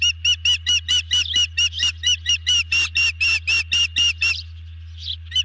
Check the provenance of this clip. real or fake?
real